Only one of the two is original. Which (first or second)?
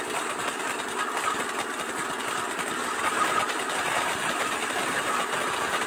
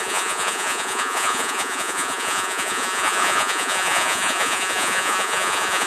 first